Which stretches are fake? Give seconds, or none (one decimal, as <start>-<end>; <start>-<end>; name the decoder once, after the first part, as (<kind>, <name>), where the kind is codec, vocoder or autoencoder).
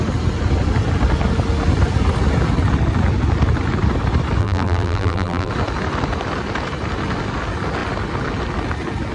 4.4-5.5 (vocoder, BigVGAN v2)